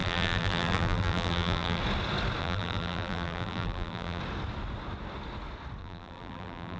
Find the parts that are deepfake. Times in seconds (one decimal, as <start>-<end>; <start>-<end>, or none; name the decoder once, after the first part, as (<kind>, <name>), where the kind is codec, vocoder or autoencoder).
0.0-1.8 (vocoder, BigVGAN v2); 2.4-4.2; 5.8-6.8